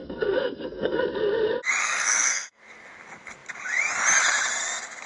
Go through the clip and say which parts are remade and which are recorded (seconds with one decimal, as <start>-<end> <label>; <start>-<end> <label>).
0.0-1.0 remade; 1.0-1.8 recorded; 1.8-2.6 remade; 2.6-5.1 recorded